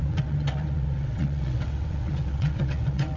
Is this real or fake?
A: fake